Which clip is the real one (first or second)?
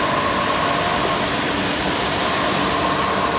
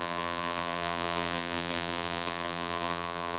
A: first